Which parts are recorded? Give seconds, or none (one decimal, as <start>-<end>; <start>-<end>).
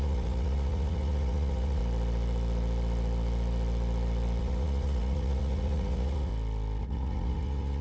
1.8-4.4; 6.3-6.8